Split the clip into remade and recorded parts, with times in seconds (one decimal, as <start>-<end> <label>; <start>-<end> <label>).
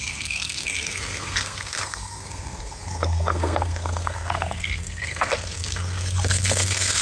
0.0-7.0 remade